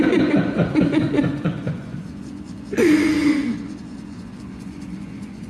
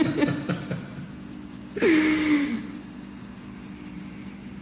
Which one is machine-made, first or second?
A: first